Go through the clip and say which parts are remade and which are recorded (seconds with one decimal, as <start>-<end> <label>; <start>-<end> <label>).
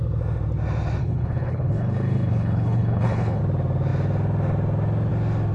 0.0-1.0 recorded; 1.0-3.4 remade; 3.4-5.5 recorded